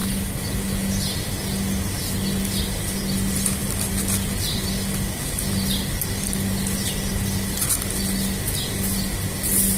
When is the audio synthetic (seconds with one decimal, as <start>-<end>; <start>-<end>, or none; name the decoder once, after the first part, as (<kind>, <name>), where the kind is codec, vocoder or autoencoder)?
none